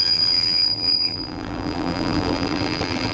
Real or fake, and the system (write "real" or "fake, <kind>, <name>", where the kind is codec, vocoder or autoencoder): fake, vocoder, BigVGAN v2